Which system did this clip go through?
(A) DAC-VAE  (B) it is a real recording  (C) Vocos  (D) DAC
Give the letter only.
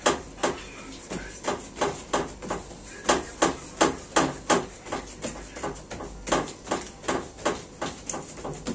B